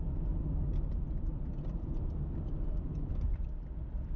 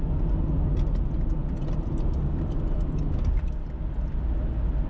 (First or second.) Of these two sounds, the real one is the second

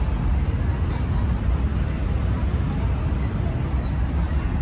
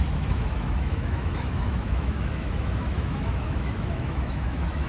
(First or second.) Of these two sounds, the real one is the first